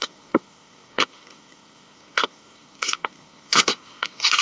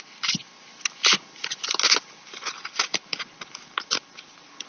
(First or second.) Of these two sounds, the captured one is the second